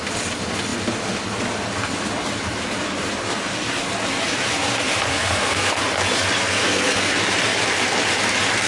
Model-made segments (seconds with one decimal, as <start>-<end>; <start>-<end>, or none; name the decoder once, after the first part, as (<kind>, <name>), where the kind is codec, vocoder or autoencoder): 5.1-5.8 (codec, SNAC); 6.4-7.1